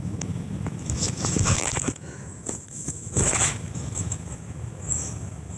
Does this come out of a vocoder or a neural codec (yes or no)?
yes